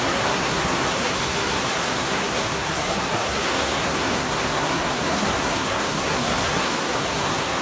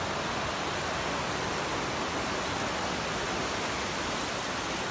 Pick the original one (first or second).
second